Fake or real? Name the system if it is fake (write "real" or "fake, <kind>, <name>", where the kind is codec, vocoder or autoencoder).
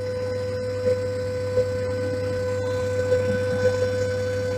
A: real